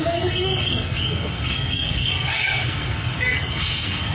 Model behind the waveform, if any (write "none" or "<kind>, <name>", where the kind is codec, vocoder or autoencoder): codec, SNAC